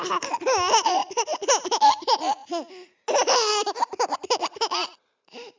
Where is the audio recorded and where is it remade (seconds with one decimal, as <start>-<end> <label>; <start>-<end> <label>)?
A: 0.0-5.6 recorded